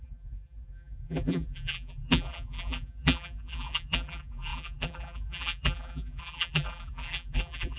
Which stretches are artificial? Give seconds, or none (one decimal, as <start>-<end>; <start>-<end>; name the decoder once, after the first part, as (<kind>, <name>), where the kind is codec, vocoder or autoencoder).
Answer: 0.0-7.8 (vocoder, BigVGAN v2)